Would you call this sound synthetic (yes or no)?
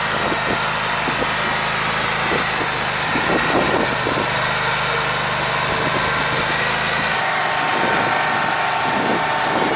no